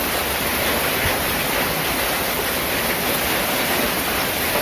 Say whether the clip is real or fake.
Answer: real